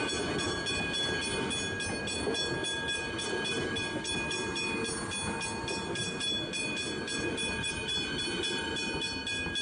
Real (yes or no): yes